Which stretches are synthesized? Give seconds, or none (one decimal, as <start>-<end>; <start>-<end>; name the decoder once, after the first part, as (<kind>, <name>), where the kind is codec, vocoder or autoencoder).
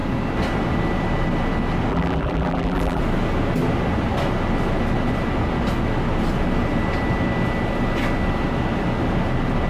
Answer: 1.9-3.0 (vocoder, BigVGAN v2)